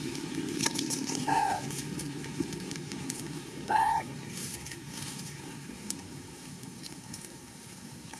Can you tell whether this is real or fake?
fake